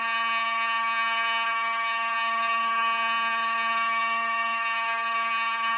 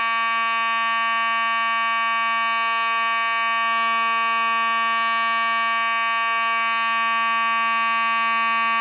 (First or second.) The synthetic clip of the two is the first